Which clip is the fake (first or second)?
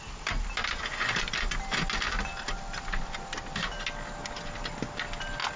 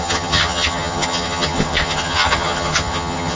second